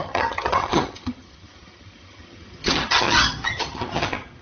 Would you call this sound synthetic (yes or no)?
yes